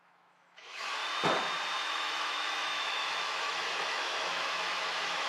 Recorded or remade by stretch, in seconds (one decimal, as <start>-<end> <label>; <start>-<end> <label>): 0.0-1.0 remade; 1.0-1.8 recorded; 1.8-5.3 remade